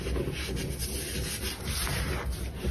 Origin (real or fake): real